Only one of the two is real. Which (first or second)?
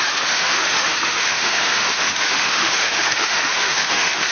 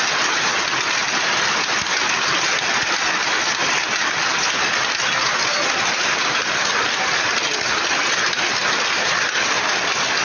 second